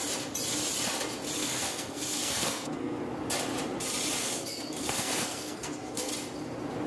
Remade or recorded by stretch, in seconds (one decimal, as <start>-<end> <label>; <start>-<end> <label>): 0.0-1.4 recorded; 1.4-3.0 remade; 3.0-4.2 recorded; 4.2-6.1 remade; 6.1-6.9 recorded